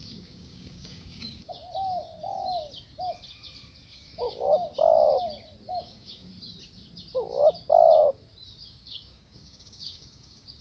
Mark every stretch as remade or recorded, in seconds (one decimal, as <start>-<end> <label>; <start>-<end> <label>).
0.0-1.6 remade; 1.6-3.9 recorded; 3.9-4.7 remade; 4.7-5.7 recorded; 5.7-6.3 remade; 6.3-8.7 recorded; 8.7-10.6 remade